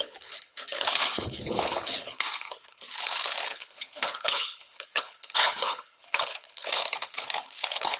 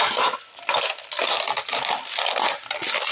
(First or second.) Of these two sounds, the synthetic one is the first